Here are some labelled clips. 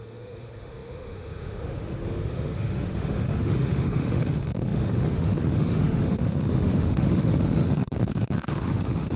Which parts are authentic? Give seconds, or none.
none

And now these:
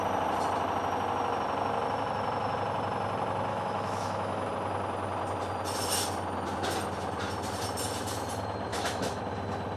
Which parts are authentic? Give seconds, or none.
0.0-3.5; 4.5-8.7; 9.2-9.8

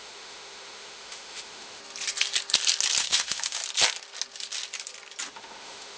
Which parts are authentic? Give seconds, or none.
1.8-3.0; 3.6-5.3

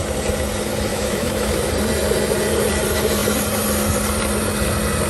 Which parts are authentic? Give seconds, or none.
0.0-0.9; 1.7-5.1

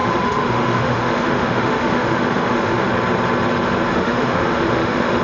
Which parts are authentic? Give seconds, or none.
2.9-3.9

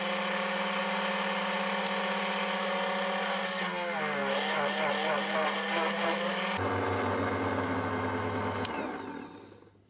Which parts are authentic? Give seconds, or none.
0.0-9.9

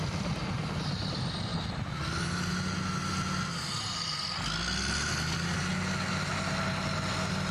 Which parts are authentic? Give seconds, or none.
0.0-7.5